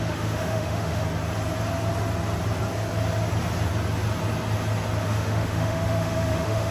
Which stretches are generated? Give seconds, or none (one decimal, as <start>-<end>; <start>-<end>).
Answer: 0.0-1.0; 5.0-6.7